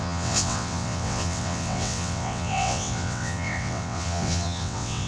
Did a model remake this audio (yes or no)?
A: yes